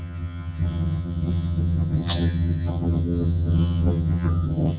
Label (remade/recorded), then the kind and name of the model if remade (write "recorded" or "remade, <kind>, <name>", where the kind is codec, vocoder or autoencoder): remade, vocoder, HiFi-GAN